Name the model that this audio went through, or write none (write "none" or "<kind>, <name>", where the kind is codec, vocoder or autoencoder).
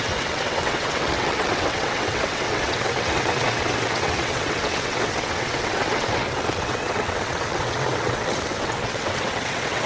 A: vocoder, WaveNeXt